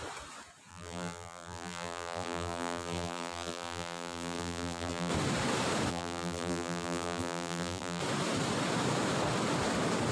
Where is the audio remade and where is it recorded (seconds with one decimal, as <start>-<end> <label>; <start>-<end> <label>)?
0.0-0.7 recorded; 0.7-5.1 remade; 5.1-5.9 recorded; 5.9-8.0 remade; 8.0-10.1 recorded